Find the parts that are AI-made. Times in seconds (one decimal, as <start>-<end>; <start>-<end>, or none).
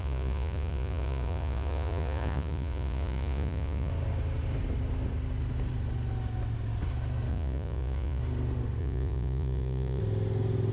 0.0-3.9; 7.3-8.2; 8.8-10.0